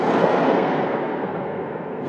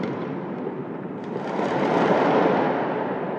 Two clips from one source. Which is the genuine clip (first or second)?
second